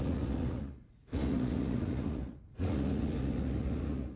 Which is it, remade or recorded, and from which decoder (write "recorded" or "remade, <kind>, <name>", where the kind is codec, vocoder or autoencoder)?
remade, vocoder, Vocos